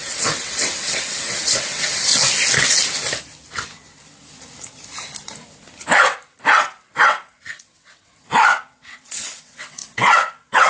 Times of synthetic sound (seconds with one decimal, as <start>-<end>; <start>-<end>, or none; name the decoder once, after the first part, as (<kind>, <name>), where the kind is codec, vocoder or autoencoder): 0.0-2.1 (vocoder, WaveNeXt); 7.0-8.1; 8.6-10.7